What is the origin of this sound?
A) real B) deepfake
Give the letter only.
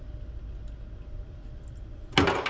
A